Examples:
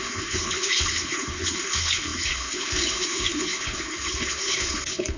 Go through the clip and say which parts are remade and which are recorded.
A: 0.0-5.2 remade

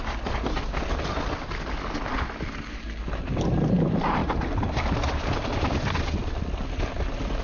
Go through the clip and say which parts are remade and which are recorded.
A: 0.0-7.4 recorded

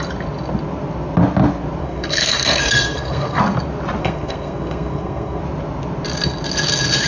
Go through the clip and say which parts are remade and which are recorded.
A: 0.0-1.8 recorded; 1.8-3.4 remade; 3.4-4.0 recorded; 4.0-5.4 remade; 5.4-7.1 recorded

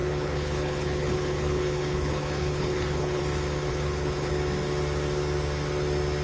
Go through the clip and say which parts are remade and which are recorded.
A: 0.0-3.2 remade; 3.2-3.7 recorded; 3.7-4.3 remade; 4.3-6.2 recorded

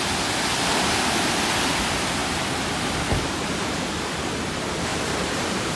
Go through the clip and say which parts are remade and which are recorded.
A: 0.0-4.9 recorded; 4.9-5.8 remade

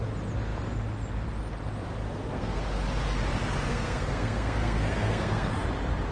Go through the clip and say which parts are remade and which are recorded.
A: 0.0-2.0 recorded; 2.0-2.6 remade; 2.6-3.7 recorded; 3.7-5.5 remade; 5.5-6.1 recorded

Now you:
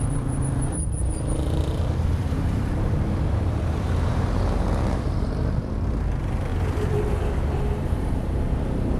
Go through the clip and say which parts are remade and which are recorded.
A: 0.0-6.5 remade; 6.5-7.9 recorded; 7.9-9.0 remade

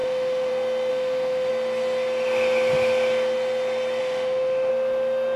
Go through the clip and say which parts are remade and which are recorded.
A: 0.0-0.5 remade; 0.5-0.9 recorded; 0.9-1.5 remade; 1.5-4.0 recorded; 4.0-4.7 remade; 4.7-5.4 recorded